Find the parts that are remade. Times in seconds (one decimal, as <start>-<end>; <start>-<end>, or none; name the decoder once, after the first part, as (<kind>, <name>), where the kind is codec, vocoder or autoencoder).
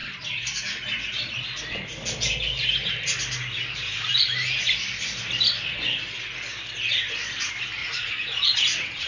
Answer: 7.8-9.1 (vocoder, Vocos)